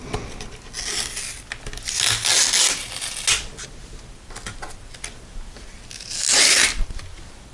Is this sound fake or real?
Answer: real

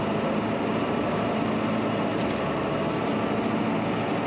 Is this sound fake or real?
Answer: real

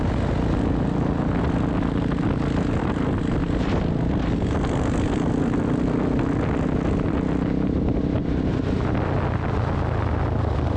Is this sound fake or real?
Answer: real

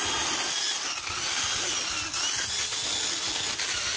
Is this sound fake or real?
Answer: real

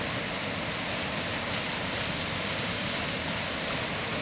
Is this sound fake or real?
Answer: real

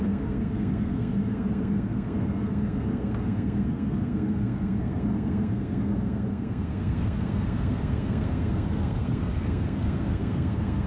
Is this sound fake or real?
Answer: fake